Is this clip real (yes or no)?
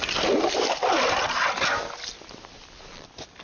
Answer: no